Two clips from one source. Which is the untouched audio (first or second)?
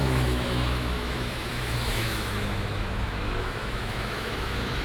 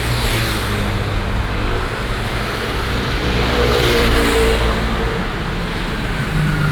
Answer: second